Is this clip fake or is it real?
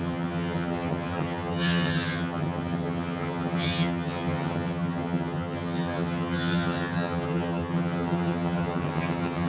fake